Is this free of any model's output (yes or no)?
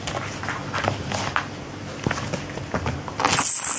yes